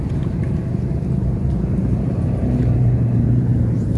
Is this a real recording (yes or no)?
no